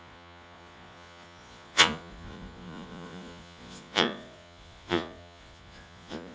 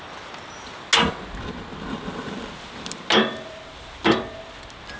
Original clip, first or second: second